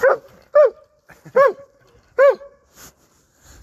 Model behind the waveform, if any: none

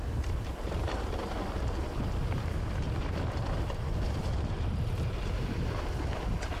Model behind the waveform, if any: vocoder, BigVGAN v2